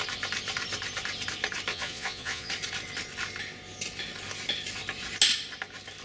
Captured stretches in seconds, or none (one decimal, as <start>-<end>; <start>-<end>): 0.0-1.7; 2.5-6.0